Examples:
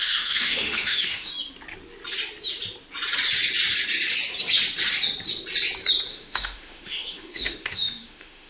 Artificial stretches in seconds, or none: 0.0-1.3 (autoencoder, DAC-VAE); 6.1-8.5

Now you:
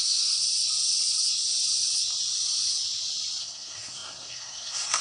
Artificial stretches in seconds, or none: 0.0-0.4 (codec, SNAC); 3.4-5.0

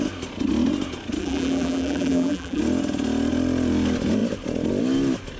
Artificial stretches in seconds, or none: 1.2-2.6 (vocoder, BigVGAN v2)

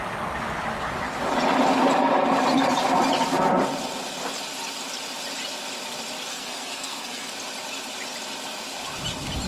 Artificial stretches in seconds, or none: 6.3-7.3 (codec, SNAC)

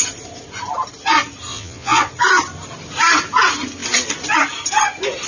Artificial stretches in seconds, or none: 1.5-2.1 (vocoder, Vocos)